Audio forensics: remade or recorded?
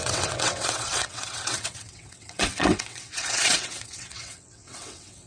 remade